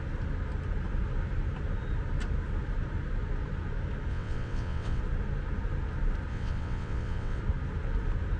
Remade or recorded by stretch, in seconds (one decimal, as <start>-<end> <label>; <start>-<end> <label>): 0.0-4.1 recorded; 4.1-5.0 remade; 5.0-6.3 recorded; 6.3-7.4 remade; 7.4-8.4 recorded